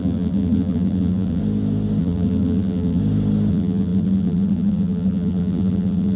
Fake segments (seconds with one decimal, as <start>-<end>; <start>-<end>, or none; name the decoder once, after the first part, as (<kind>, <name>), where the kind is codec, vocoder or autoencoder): 0.0-1.4 (vocoder, BigVGAN v2); 2.0-3.0; 3.5-6.2